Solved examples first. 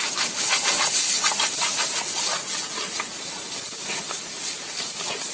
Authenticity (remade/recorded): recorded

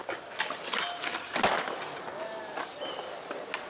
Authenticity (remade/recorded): recorded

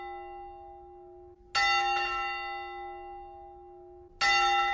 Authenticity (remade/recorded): recorded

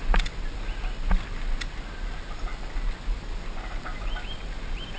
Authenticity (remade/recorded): recorded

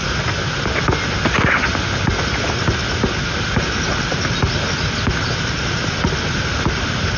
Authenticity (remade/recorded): recorded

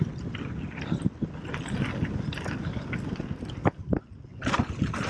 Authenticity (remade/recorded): recorded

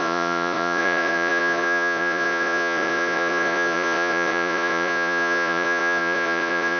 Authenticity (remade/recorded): remade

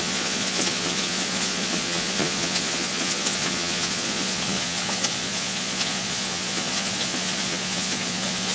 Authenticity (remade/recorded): remade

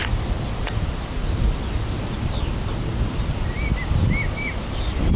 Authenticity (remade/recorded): recorded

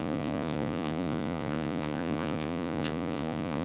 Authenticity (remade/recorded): remade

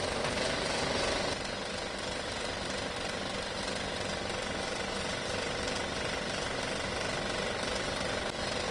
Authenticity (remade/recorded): recorded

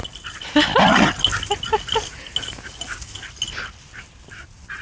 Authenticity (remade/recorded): recorded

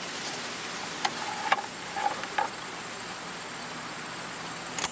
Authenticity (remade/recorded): recorded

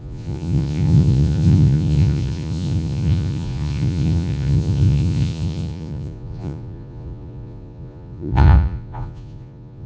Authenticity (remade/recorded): remade